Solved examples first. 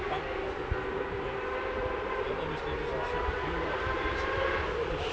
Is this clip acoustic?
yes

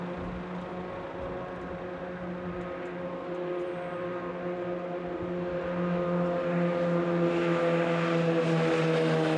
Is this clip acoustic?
yes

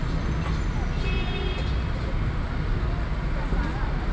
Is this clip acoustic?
yes